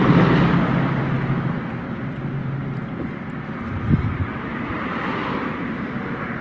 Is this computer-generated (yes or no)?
no